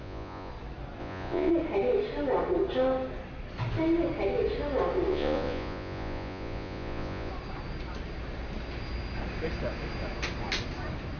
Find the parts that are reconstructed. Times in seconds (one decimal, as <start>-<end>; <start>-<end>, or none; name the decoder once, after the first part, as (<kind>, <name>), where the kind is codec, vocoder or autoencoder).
0.0-0.5 (vocoder, Vocos); 1.0-1.5; 5.1-7.3